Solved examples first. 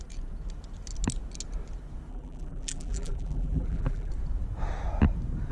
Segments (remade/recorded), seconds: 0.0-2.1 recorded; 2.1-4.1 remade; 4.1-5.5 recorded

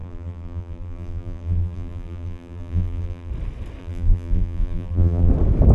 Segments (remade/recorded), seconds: 0.0-3.3 remade; 3.3-3.8 recorded; 3.8-5.3 remade; 5.3-5.7 recorded

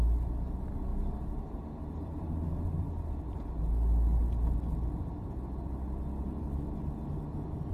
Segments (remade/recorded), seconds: 0.0-0.9 recorded; 0.9-3.0 remade; 3.0-7.7 recorded

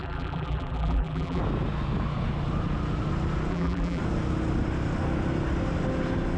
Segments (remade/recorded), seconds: 0.0-1.4 remade; 1.4-3.5 recorded; 3.5-4.0 remade; 4.0-6.4 recorded

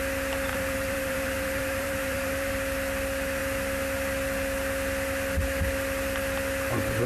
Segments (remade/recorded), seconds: 0.0-0.5 recorded; 0.5-2.5 remade; 2.5-7.1 recorded

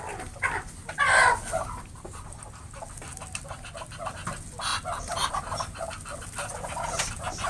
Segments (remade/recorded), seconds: 0.0-7.5 recorded